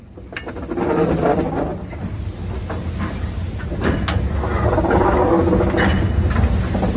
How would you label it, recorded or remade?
recorded